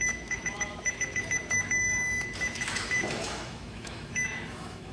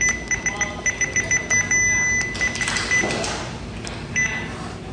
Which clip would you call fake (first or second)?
first